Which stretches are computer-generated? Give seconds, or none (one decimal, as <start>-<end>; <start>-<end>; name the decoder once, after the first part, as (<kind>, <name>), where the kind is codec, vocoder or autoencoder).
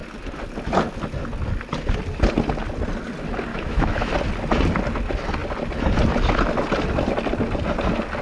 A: 3.5-4.1 (autoencoder, DAC-VAE)